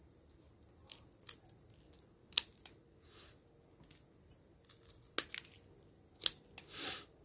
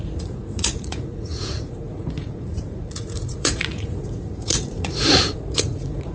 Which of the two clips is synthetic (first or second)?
second